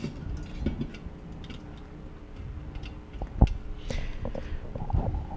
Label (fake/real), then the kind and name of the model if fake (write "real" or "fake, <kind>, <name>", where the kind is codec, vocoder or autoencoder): real